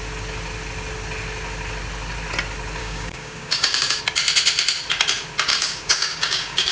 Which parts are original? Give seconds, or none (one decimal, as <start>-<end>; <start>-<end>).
0.0-2.8; 4.0-5.5